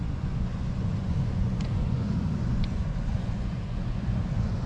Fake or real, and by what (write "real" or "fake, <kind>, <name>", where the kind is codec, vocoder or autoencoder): fake, vocoder, Vocos